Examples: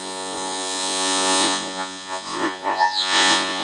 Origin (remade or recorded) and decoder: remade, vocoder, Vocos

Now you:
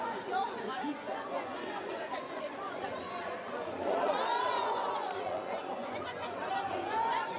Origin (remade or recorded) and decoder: remade, vocoder, Vocos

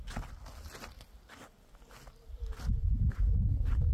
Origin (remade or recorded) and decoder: recorded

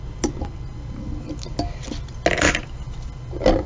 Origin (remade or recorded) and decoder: recorded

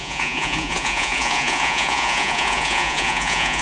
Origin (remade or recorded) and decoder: remade, vocoder, Vocos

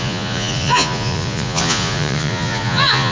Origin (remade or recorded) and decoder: remade, vocoder, Vocos